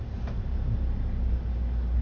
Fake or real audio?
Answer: real